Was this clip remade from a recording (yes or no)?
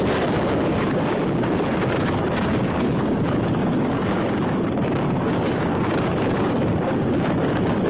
yes